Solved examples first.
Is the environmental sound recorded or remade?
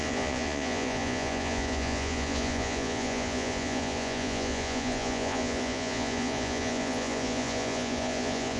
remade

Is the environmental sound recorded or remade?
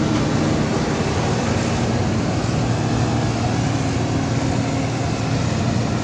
recorded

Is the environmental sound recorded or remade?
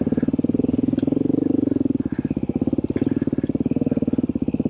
recorded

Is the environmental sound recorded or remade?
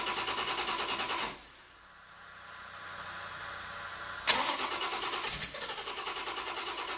recorded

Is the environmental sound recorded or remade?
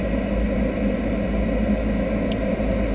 recorded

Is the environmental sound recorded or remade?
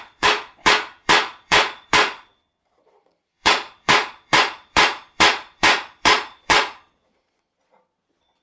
remade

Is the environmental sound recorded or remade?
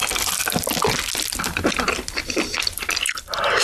recorded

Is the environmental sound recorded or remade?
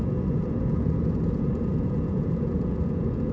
remade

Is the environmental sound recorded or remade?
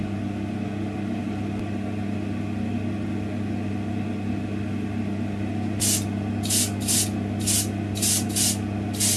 recorded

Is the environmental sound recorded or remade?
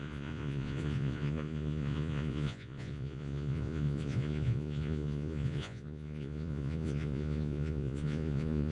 remade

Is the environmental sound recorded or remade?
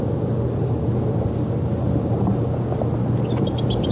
recorded